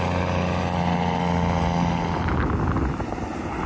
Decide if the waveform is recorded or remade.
recorded